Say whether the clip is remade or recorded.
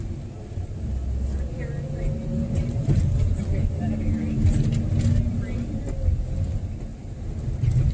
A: recorded